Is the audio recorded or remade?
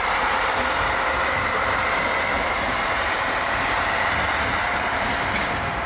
remade